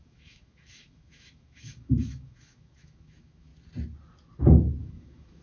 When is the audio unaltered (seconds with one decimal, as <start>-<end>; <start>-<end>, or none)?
3.5-4.8